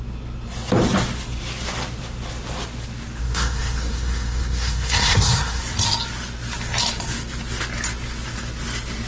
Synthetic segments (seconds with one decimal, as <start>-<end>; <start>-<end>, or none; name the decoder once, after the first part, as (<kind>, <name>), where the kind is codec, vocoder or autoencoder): 3.2-5.6 (codec, SNAC)